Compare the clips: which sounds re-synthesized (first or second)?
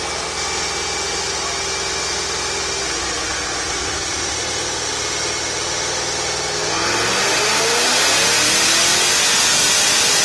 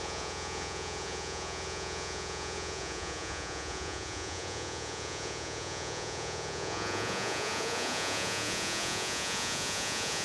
second